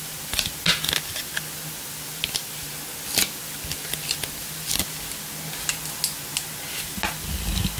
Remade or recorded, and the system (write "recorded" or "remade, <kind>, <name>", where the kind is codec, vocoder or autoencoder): recorded